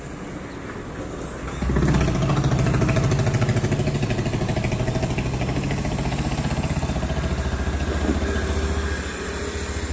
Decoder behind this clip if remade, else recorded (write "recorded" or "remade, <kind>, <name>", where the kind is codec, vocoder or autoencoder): recorded